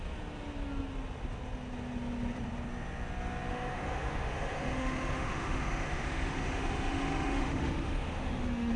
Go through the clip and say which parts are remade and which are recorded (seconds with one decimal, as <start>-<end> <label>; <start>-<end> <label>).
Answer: 0.0-3.5 recorded; 3.5-8.8 remade